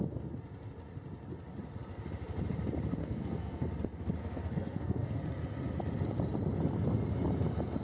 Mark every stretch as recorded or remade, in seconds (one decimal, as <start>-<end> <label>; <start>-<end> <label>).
0.0-3.0 recorded; 3.0-3.7 remade; 3.7-4.2 recorded; 4.2-5.2 remade; 5.2-7.8 recorded